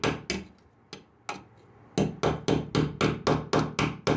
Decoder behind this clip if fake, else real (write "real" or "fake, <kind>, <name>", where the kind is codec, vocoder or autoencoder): real